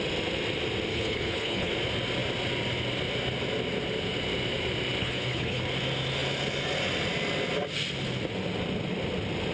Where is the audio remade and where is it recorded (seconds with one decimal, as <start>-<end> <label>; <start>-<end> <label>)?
0.0-0.9 recorded; 0.9-1.7 remade; 1.7-5.0 recorded; 5.0-5.6 remade; 5.6-9.5 recorded